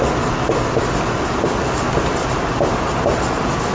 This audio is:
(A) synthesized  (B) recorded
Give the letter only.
B